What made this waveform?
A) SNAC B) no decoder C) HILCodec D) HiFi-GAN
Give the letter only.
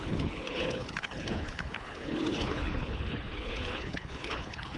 C